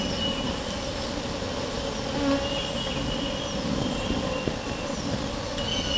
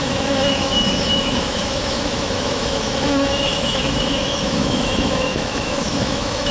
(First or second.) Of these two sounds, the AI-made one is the second